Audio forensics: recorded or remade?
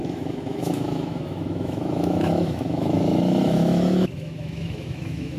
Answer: remade